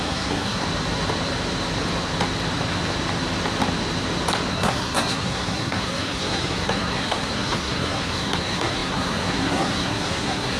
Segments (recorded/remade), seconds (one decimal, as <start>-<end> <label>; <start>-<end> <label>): 0.0-0.6 remade; 0.6-4.5 recorded; 4.5-10.6 remade